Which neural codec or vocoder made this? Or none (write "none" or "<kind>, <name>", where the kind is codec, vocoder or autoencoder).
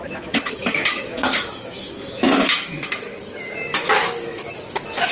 autoencoder, DAC-VAE